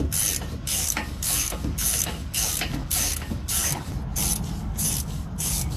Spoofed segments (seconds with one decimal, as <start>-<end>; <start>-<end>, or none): 0.7-3.9; 4.6-5.8